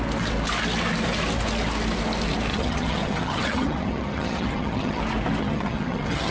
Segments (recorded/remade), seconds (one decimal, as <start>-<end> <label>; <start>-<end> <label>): 0.0-2.5 recorded; 2.5-5.0 remade; 5.0-5.4 recorded; 5.4-6.3 remade